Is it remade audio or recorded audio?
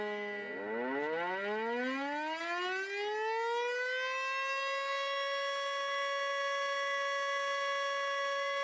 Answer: recorded